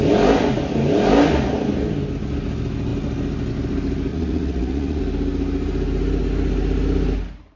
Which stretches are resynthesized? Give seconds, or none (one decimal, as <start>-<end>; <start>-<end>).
4.1-5.0